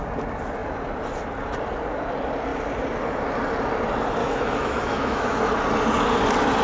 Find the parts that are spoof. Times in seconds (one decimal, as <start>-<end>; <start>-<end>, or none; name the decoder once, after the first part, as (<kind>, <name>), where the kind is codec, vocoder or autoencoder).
4.2-5.5 (autoencoder, DAC-VAE)